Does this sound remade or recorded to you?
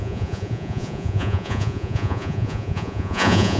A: remade